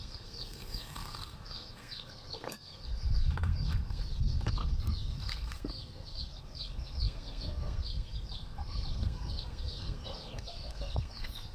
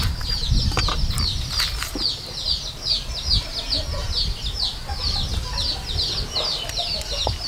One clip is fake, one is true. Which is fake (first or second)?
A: first